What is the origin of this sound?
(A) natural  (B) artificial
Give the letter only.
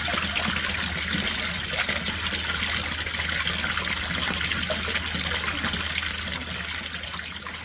A